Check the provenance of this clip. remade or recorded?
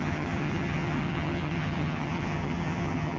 remade